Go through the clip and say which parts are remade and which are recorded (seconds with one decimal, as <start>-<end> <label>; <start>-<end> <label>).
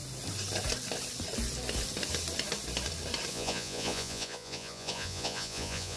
0.0-3.3 recorded; 3.3-6.0 remade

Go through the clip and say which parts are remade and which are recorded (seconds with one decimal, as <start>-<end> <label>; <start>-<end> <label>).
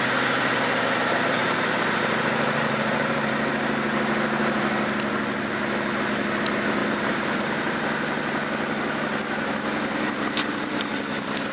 0.0-1.4 recorded; 1.4-3.5 remade; 3.5-6.8 recorded; 6.8-7.4 remade; 7.4-11.5 recorded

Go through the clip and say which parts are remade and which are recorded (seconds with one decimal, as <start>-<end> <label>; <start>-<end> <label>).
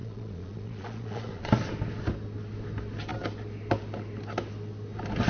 0.0-1.5 remade; 1.5-5.3 recorded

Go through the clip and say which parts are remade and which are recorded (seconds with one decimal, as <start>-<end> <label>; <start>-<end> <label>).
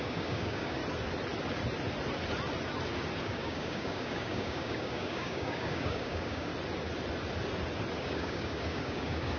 0.0-0.8 remade; 0.8-3.2 recorded; 3.2-6.5 remade; 6.5-8.0 recorded; 8.0-9.4 remade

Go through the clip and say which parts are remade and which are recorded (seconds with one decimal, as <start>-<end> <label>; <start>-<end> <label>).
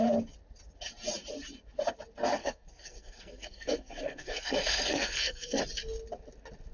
0.0-2.4 recorded; 2.4-5.6 remade; 5.6-6.7 recorded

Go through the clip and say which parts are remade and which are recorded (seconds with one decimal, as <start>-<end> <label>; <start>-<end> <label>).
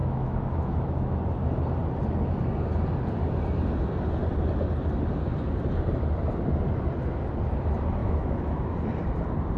0.0-1.2 remade; 1.2-8.0 recorded; 8.0-8.7 remade; 8.7-9.6 recorded